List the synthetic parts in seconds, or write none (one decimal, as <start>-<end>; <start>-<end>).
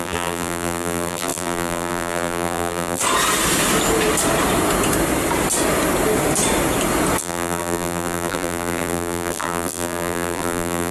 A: 0.0-3.0; 7.2-10.9